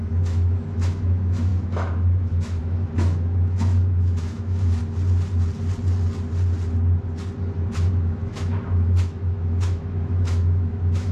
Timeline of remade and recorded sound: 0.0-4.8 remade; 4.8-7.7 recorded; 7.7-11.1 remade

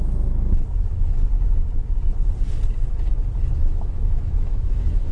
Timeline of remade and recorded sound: 0.0-3.6 recorded; 3.6-5.1 remade

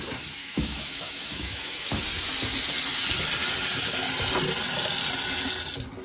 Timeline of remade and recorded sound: 0.0-0.4 recorded; 0.4-2.0 remade; 2.0-6.0 recorded

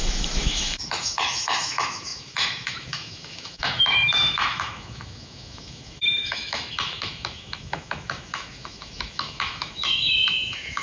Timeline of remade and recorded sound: 0.0-10.8 remade

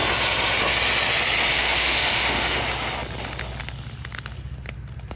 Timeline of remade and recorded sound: 0.0-1.5 recorded; 1.5-2.6 remade; 2.6-5.2 recorded

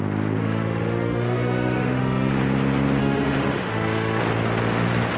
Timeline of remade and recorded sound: 0.0-0.4 recorded; 0.4-2.3 remade; 2.3-3.0 recorded; 3.0-4.2 remade; 4.2-5.2 recorded